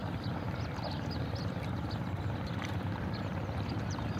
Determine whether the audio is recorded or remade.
remade